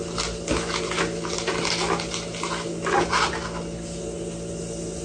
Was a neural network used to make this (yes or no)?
no